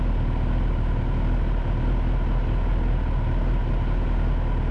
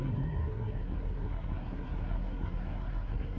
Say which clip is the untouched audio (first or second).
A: first